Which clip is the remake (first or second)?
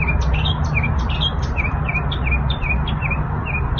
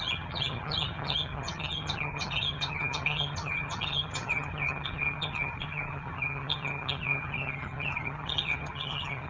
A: second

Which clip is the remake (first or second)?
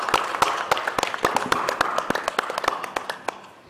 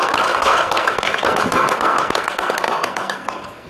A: second